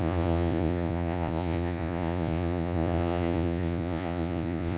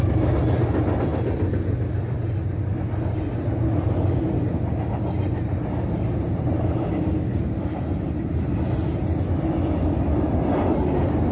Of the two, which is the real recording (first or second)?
second